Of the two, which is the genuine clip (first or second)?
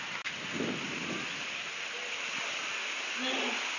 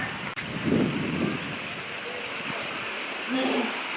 first